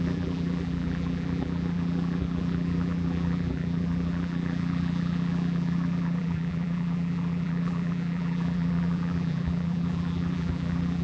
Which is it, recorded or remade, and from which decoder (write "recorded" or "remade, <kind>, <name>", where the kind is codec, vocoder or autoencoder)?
remade, vocoder, BigVGAN v2